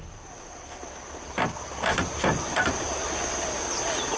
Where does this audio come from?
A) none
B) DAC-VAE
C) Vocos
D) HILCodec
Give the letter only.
A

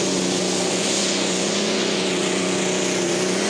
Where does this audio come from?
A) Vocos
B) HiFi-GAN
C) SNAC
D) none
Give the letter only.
A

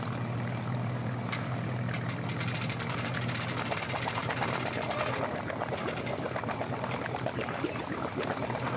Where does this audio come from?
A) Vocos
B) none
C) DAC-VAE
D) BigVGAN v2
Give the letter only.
B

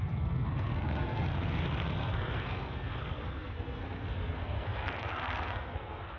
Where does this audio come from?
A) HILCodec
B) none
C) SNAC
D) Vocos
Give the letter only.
C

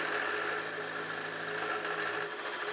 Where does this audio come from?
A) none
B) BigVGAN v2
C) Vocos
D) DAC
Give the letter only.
A